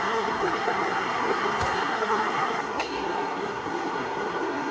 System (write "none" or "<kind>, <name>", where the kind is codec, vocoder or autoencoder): codec, SNAC